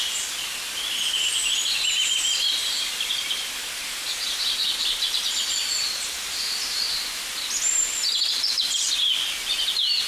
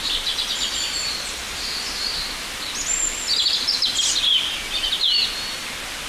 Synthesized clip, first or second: first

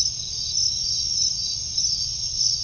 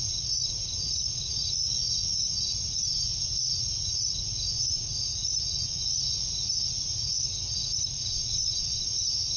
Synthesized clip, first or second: second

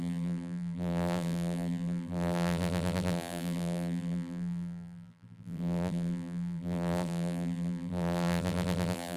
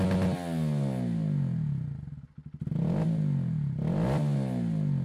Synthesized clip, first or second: first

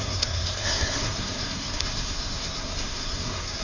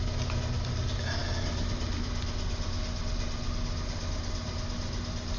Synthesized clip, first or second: first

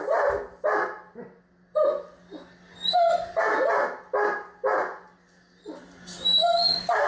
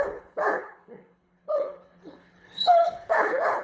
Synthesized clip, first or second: second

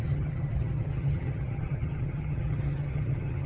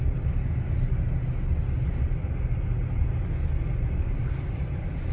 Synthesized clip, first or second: first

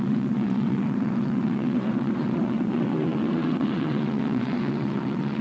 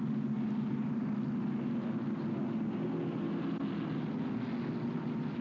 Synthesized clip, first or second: first